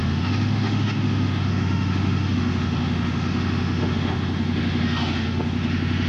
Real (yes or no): no